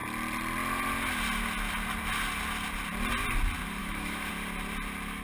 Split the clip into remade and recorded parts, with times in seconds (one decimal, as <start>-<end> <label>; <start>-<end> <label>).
0.0-3.8 recorded; 3.8-4.3 remade; 4.3-5.2 recorded